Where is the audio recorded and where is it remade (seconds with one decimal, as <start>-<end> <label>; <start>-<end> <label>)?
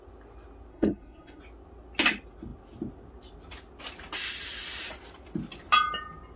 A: 0.0-0.7 recorded; 0.7-1.4 remade; 1.4-6.4 recorded